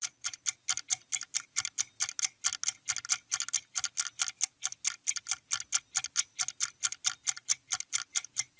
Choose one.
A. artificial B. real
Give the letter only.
B